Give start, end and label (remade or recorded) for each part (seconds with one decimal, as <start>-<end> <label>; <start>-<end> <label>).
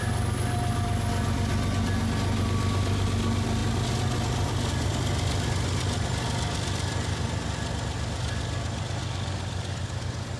0.0-10.4 recorded